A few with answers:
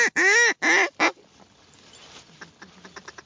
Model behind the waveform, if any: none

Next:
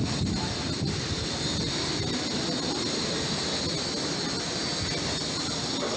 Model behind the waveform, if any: none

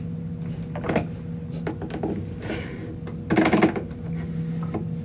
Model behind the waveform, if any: none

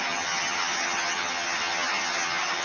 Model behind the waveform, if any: vocoder, HiFi-GAN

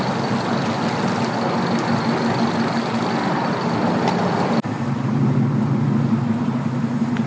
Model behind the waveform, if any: none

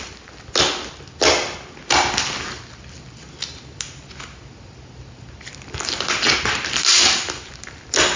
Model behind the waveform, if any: none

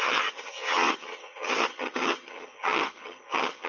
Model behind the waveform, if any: vocoder, HiFi-GAN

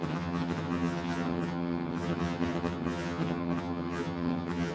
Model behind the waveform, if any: vocoder, HiFi-GAN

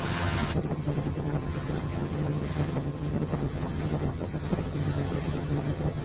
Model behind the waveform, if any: vocoder, HiFi-GAN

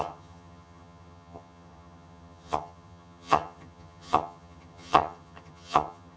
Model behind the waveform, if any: vocoder, HiFi-GAN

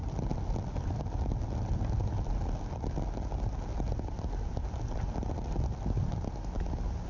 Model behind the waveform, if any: none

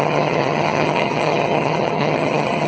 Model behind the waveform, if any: vocoder, HiFi-GAN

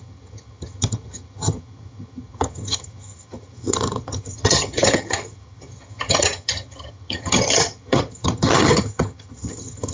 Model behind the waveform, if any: vocoder, HiFi-GAN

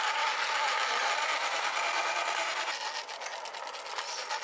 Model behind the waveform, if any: none